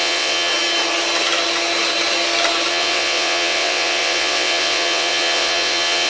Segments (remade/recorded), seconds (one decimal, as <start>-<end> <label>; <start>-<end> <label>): 0.0-0.5 remade; 0.5-2.7 recorded; 2.7-6.1 remade